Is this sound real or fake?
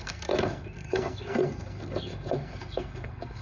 fake